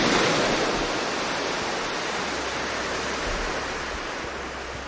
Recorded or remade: recorded